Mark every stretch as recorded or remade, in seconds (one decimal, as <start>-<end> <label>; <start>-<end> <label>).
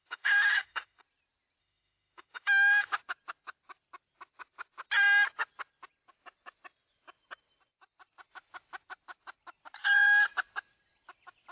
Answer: 0.0-1.0 remade; 1.0-1.6 recorded; 1.6-2.9 remade; 2.9-11.5 recorded